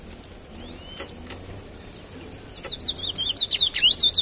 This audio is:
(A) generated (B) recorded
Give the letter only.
B